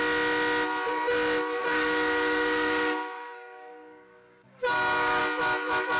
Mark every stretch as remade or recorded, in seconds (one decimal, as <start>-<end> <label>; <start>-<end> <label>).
0.0-1.6 recorded; 1.6-5.2 remade; 5.2-6.0 recorded